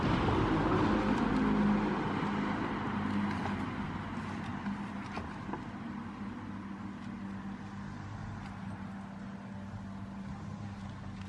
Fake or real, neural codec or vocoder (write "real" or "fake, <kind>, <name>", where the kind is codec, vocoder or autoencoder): real